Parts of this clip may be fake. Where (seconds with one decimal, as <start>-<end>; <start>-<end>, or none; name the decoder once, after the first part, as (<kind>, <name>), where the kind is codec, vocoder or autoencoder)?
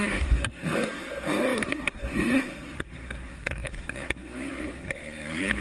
0.0-5.6 (codec, SNAC)